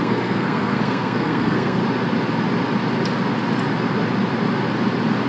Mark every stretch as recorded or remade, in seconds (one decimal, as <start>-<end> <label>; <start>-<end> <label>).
0.0-1.8 remade; 1.8-5.3 recorded